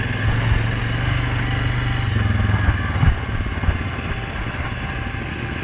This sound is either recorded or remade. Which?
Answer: recorded